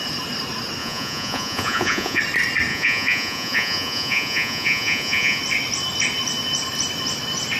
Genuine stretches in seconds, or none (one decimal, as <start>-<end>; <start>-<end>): 0.0-0.8; 2.2-2.7; 5.4-7.6